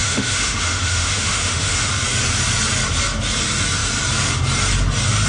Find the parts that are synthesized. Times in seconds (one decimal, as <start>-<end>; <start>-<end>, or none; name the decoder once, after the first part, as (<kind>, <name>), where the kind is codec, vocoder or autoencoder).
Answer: 0.0-1.9 (autoencoder, DAC-VAE)